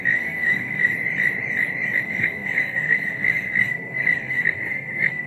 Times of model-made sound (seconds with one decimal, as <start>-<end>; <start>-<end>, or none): 0.0-0.9; 2.0-5.3